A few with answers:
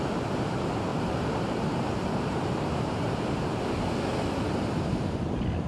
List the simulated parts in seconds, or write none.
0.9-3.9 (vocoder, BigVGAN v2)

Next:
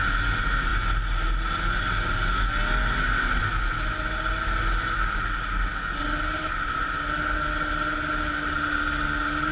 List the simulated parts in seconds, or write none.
none

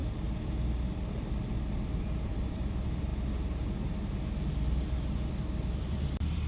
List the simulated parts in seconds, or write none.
1.3-3.1 (vocoder, BigVGAN v2); 5.3-6.5